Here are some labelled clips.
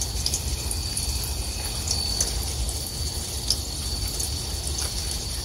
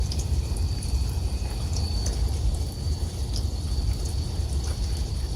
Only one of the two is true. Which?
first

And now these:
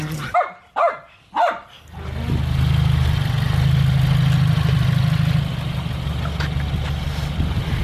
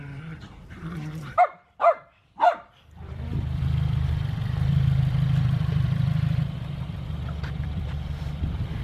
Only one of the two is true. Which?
first